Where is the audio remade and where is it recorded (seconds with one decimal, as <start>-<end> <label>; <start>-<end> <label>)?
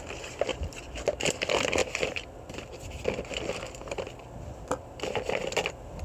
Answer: 0.0-0.5 recorded; 0.5-1.2 remade; 1.2-6.0 recorded